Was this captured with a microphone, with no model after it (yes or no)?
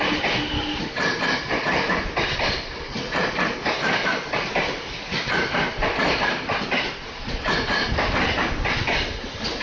yes